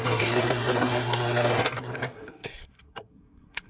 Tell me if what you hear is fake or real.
fake